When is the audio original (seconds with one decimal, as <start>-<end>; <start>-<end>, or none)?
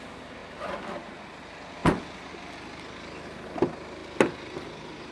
0.0-5.1